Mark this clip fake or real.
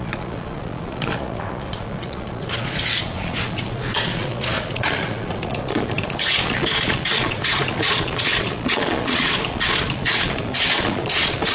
fake